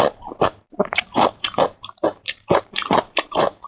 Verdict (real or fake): fake